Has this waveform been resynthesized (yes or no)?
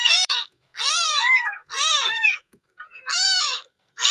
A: yes